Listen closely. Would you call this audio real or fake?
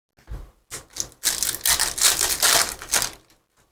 real